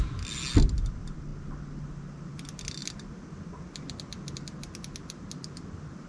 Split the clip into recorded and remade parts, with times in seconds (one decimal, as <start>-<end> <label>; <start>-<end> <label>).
0.0-6.1 recorded